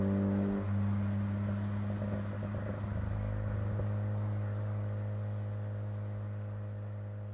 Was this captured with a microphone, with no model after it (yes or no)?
yes